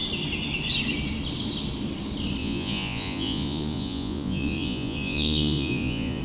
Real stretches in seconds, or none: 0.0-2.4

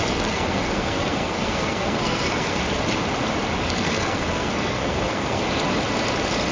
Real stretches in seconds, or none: 2.6-3.8; 5.4-6.5

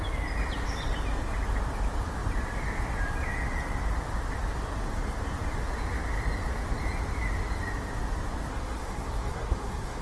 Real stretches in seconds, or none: 0.0-8.5

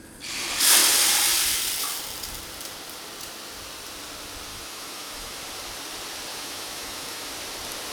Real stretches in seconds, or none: 0.0-4.5; 5.4-6.3; 7.3-7.9

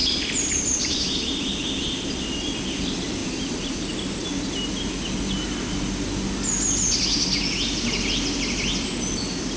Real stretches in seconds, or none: 0.0-3.2; 4.3-9.6

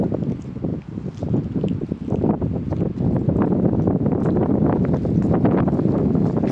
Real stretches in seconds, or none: 0.0-6.5

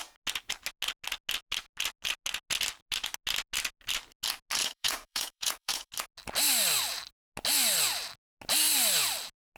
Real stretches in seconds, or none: 0.0-4.6; 5.9-9.6

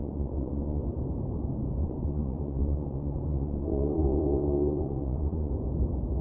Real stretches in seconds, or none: 0.8-1.8; 5.5-6.2